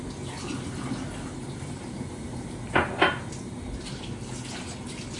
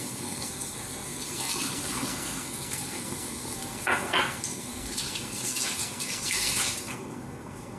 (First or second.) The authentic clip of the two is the first